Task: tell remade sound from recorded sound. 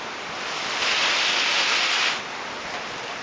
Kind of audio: recorded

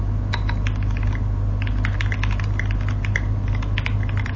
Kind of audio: recorded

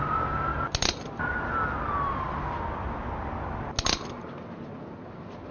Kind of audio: recorded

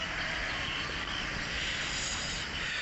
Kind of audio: recorded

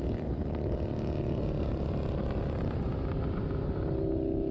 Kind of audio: recorded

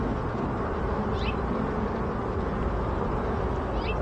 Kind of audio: recorded